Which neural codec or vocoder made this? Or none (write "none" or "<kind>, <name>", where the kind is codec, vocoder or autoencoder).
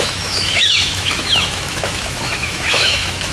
autoencoder, DAC-VAE